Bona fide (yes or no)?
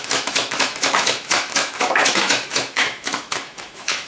no